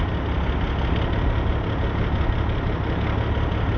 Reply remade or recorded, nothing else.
recorded